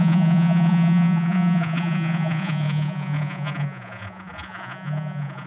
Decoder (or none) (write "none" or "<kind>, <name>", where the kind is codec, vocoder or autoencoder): vocoder, Vocos